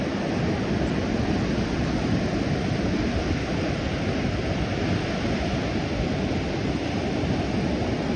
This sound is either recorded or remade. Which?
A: recorded